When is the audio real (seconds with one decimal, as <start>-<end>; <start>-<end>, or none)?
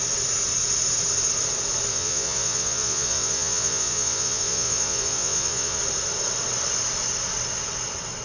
0.0-1.9; 5.8-8.2